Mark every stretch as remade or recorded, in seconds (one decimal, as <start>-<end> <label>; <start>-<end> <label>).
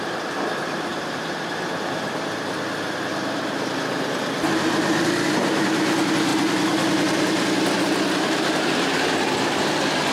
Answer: 0.0-0.9 recorded; 0.9-3.7 remade; 3.7-6.3 recorded; 6.3-10.1 remade